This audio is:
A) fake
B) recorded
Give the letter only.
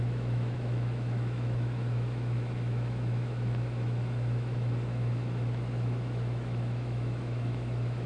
A